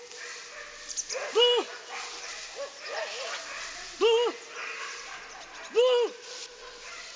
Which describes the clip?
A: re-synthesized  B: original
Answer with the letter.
B